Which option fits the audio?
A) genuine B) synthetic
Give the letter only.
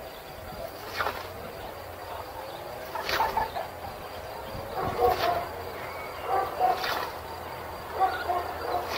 A